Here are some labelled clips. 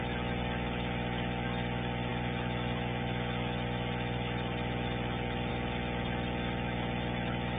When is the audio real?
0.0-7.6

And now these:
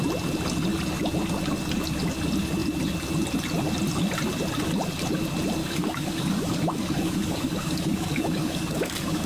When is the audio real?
0.0-5.6

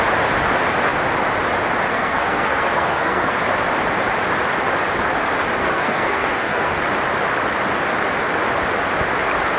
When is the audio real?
0.0-1.9; 3.4-5.6; 6.8-9.6

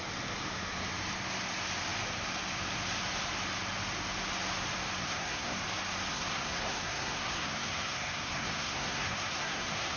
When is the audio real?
0.0-5.0; 5.6-6.1

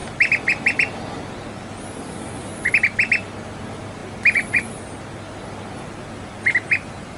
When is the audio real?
0.0-7.2

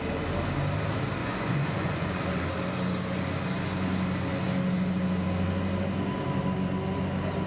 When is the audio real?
0.0-1.2; 2.2-7.5